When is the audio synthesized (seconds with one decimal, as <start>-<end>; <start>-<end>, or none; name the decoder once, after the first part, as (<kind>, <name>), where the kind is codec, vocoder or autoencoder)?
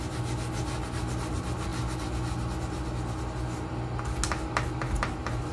none